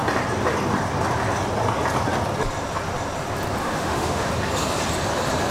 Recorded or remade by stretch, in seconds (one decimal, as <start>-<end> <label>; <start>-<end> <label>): 0.0-3.6 recorded; 3.6-4.3 remade; 4.3-5.5 recorded